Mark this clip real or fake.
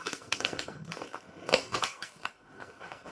fake